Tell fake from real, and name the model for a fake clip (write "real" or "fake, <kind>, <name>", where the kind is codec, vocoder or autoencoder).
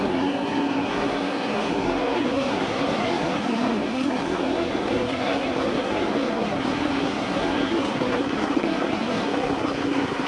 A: fake, codec, SNAC